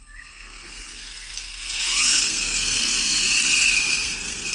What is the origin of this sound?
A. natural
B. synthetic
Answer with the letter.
B